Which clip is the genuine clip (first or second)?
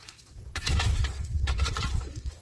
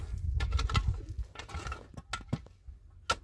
second